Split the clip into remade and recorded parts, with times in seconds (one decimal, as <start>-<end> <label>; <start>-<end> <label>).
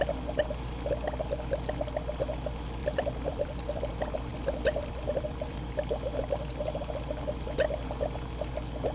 0.0-2.8 recorded; 2.8-3.9 remade; 3.9-4.3 recorded; 4.3-5.7 remade; 5.7-8.9 recorded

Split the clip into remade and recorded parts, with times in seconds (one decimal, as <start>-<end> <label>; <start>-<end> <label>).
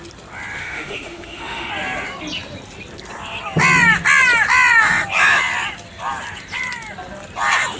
0.0-0.6 recorded; 0.6-1.7 remade; 1.7-7.8 recorded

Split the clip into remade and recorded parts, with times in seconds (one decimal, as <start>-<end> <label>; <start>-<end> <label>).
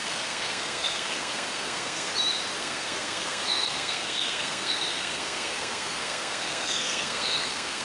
0.0-2.1 remade; 2.1-2.6 recorded; 2.6-7.8 remade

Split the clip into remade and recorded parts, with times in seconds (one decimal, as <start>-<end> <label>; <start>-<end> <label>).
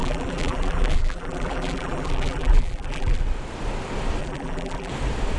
0.0-3.2 remade; 3.2-4.2 recorded; 4.2-4.9 remade; 4.9-5.4 recorded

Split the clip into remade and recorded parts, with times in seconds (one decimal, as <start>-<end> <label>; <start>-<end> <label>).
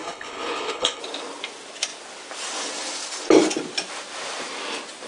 0.0-1.0 remade; 1.0-5.1 recorded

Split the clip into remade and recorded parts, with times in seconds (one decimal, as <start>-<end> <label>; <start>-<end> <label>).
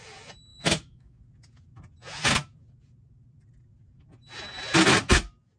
0.0-0.5 recorded; 0.5-1.2 remade; 1.2-5.6 recorded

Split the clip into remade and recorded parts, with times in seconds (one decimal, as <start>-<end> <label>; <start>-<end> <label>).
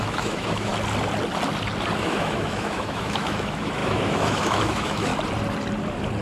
0.0-0.7 remade; 0.7-2.0 recorded; 2.0-5.1 remade; 5.1-6.2 recorded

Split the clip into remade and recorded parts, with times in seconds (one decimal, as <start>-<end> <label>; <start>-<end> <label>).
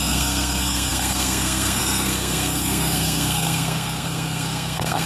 0.0-5.1 remade